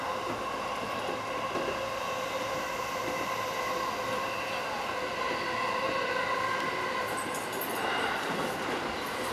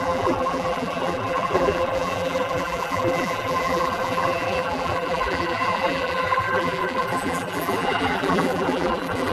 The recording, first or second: first